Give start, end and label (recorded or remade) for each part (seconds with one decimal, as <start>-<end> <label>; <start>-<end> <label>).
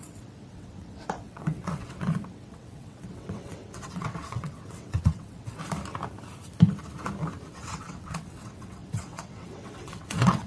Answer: 0.0-5.6 remade; 5.6-7.5 recorded; 7.5-10.5 remade